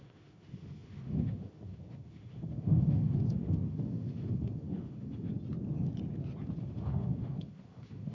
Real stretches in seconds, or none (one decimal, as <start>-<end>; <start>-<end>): 5.3-6.6